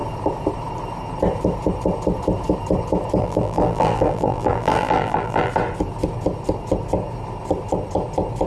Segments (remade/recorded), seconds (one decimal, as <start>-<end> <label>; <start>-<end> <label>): 0.0-3.2 recorded; 3.2-5.5 remade; 5.5-8.5 recorded